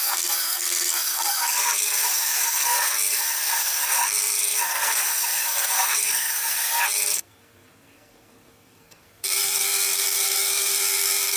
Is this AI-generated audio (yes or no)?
yes